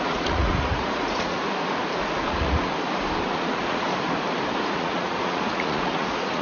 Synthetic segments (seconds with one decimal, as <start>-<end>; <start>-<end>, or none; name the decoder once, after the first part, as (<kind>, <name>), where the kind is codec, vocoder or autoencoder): 0.0-1.4 (vocoder, Vocos); 2.0-2.7; 3.3-3.9; 4.7-6.4